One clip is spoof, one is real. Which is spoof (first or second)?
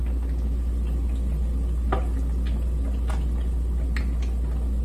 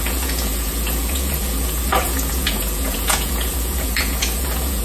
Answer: second